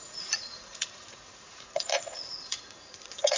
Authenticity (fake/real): fake